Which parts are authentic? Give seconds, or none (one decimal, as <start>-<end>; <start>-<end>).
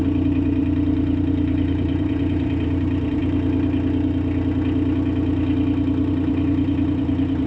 3.2-6.1